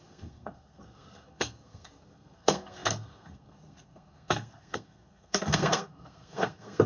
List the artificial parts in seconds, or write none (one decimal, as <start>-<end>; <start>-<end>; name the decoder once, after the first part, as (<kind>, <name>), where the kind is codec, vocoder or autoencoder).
0.0-6.9 (codec, SNAC)